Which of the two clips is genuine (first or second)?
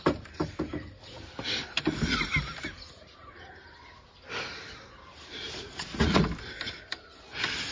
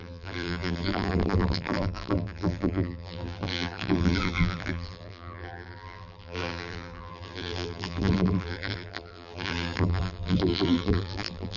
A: first